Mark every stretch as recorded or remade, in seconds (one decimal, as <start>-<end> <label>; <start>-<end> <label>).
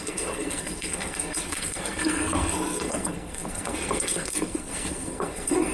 0.0-5.7 remade